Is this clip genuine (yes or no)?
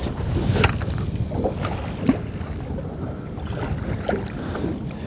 yes